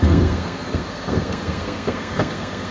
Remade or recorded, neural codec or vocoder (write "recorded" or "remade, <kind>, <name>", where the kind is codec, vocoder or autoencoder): remade, codec, SNAC